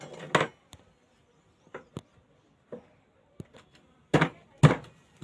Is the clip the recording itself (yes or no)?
yes